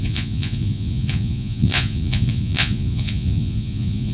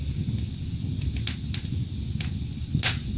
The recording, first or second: second